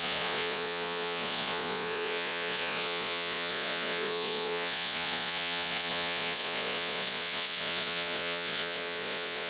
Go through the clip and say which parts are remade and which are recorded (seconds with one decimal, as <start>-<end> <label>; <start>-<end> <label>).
0.0-9.5 remade